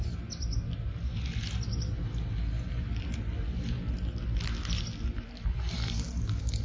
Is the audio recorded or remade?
recorded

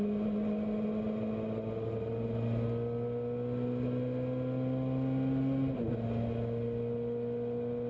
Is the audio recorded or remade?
recorded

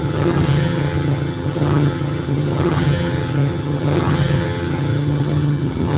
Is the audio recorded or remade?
remade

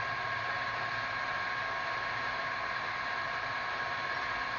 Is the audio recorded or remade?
recorded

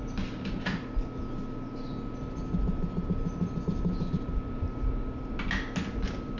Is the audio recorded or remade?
recorded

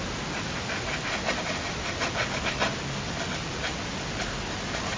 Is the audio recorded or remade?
recorded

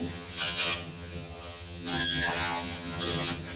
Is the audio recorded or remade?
remade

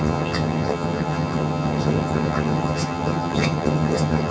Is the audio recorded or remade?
remade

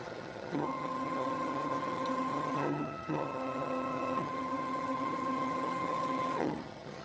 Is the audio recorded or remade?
remade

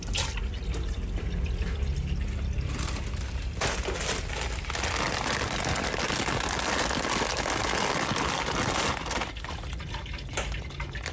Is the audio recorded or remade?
recorded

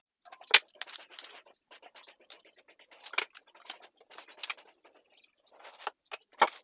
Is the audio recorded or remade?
recorded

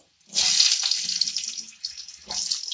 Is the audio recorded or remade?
recorded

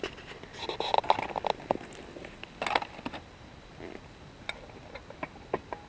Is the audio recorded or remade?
recorded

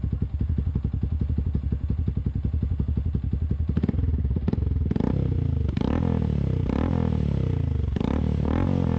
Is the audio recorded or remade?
recorded